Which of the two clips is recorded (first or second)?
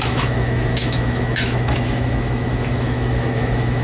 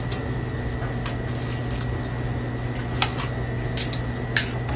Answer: second